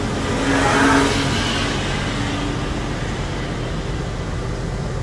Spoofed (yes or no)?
no